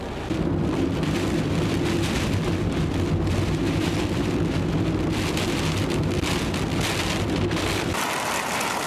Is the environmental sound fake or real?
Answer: real